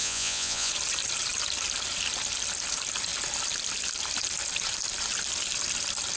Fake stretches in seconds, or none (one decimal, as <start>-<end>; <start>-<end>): 0.0-0.7